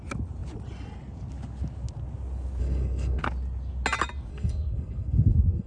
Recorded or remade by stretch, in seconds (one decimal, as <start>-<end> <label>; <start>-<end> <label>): 0.0-2.6 recorded; 2.6-3.2 remade; 3.2-4.3 recorded; 4.3-5.7 remade